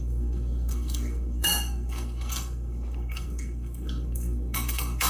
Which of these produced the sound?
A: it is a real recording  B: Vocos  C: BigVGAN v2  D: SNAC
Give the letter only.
D